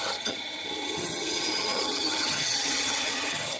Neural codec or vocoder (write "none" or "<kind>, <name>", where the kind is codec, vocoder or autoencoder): vocoder, HiFi-GAN